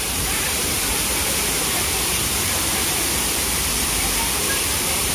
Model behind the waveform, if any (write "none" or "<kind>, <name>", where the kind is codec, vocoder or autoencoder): vocoder, BigVGAN v2